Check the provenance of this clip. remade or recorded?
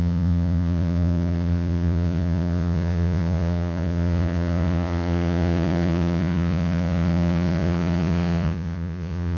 remade